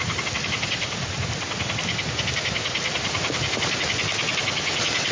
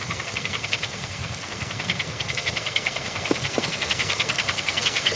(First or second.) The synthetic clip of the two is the second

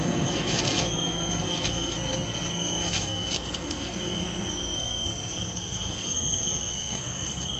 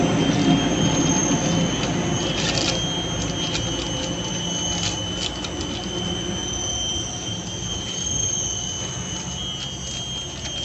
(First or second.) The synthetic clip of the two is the first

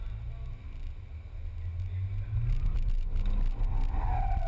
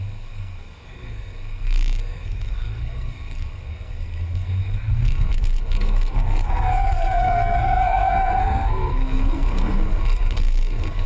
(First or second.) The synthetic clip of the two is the second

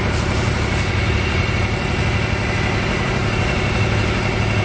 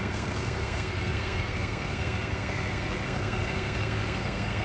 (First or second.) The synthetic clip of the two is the second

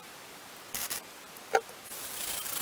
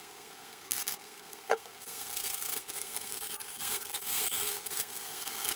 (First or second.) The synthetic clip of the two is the second